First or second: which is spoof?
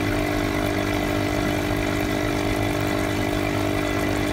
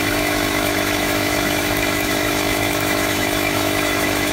second